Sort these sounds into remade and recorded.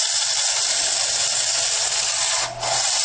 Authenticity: recorded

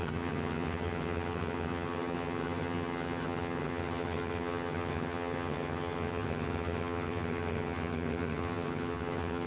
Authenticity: remade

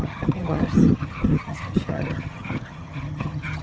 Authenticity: remade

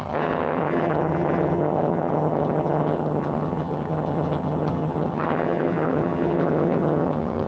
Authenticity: remade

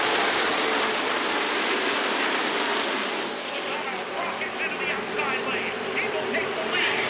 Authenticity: recorded